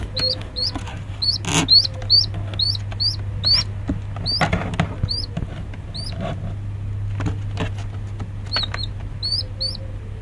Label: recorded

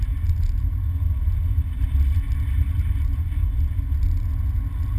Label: recorded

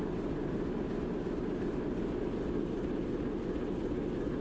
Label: recorded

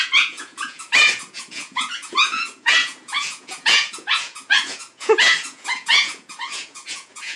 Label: remade